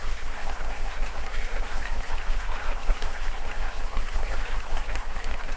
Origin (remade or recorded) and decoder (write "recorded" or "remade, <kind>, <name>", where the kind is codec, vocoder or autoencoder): remade, codec, SNAC